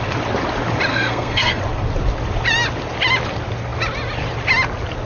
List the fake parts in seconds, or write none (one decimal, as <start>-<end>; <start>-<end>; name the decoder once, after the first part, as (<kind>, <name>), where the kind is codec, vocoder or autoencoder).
0.9-1.6 (codec, SNAC)